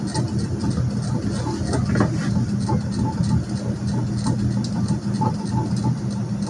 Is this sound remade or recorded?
recorded